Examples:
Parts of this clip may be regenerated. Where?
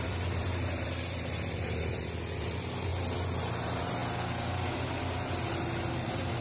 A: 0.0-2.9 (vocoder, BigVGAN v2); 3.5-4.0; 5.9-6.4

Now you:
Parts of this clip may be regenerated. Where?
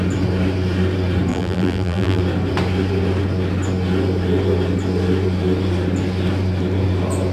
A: 1.3-2.2 (vocoder, BigVGAN v2)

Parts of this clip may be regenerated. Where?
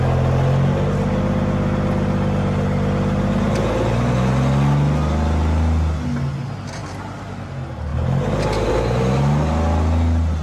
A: none